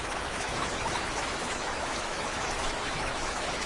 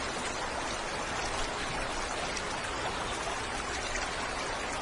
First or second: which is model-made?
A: first